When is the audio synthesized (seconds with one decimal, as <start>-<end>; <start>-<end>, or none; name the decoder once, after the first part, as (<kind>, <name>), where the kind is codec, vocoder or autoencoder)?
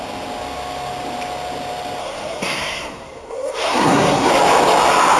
2.0-4.3 (codec, SNAC)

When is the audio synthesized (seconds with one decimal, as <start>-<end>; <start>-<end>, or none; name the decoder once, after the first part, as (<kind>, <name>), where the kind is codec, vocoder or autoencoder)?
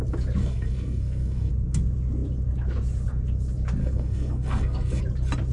0.4-1.5 (codec, SNAC); 3.8-5.0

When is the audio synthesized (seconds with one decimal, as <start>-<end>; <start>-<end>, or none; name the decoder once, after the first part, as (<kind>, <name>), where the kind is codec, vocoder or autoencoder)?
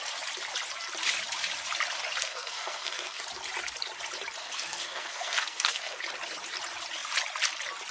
2.2-3.2 (codec, SNAC); 4.4-6.0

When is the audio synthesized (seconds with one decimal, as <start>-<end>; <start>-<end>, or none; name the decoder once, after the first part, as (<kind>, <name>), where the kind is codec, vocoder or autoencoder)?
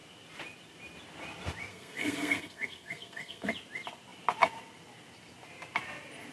1.7-3.5 (codec, SNAC)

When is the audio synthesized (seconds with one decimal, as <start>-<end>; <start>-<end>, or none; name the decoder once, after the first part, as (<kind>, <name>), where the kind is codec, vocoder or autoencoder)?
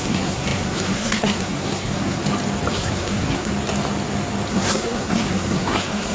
0.0-2.2 (codec, SNAC); 2.7-3.5; 4.5-6.1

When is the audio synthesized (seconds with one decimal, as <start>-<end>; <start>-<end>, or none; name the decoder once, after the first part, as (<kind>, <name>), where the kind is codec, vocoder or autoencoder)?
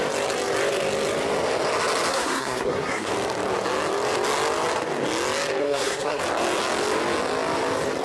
2.1-3.1 (codec, SNAC); 5.6-6.2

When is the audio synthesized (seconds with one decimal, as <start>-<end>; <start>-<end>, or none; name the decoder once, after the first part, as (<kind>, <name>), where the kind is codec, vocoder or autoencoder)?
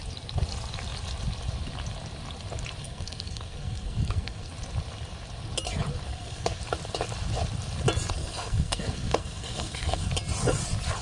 2.8-4.5 (codec, SNAC); 6.1-6.6; 8.2-10.1